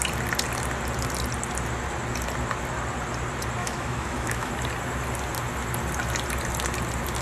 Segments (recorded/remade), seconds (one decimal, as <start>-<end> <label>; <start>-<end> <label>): 0.0-3.6 recorded; 3.6-4.5 remade; 4.5-7.2 recorded